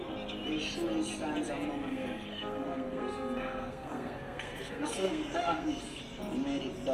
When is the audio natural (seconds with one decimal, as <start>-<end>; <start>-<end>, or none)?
0.0-1.9; 6.0-6.9